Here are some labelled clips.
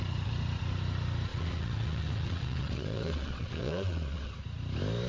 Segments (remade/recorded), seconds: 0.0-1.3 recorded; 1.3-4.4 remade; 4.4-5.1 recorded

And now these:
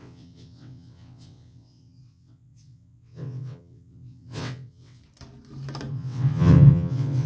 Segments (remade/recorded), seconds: 0.0-5.0 remade; 5.0-5.9 recorded; 5.9-7.3 remade

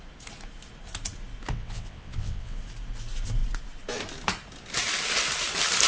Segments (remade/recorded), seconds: 0.0-1.5 recorded; 1.5-2.6 remade; 2.6-5.9 recorded

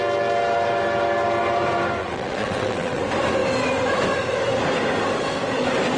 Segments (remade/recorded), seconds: 0.0-2.0 recorded; 2.0-3.0 remade; 3.0-6.0 recorded

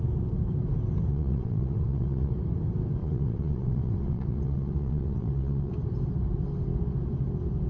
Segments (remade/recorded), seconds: 0.0-1.1 recorded; 1.1-2.3 remade; 2.3-3.0 recorded; 3.0-5.7 remade; 5.7-7.7 recorded

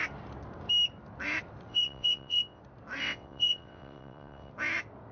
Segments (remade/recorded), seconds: 0.0-1.7 recorded; 1.7-2.6 remade; 2.6-3.0 recorded; 3.0-4.5 remade; 4.5-5.1 recorded

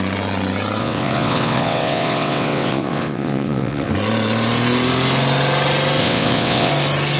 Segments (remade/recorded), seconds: 0.0-0.8 recorded; 0.8-3.9 remade; 3.9-6.0 recorded; 6.0-6.7 remade; 6.7-7.2 recorded

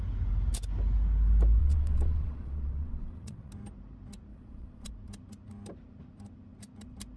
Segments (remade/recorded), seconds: 0.0-1.6 recorded; 1.6-3.5 remade; 3.5-4.3 recorded; 4.3-4.9 remade; 4.9-7.2 recorded